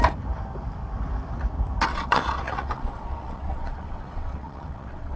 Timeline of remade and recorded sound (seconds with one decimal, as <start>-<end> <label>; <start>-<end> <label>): 0.0-1.9 recorded; 1.9-5.2 remade